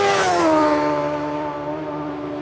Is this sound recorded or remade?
recorded